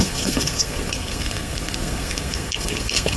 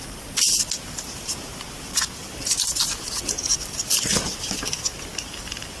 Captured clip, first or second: second